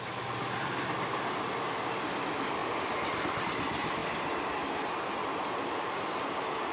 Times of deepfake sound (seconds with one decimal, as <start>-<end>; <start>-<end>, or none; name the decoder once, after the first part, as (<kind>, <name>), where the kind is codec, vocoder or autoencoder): none